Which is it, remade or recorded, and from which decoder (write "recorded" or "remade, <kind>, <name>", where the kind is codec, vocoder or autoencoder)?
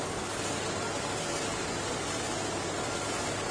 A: recorded